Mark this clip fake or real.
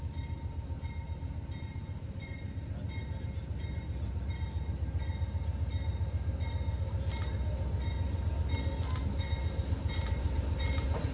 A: real